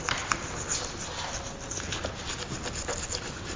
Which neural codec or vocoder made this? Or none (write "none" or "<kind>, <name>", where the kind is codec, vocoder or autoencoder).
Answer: none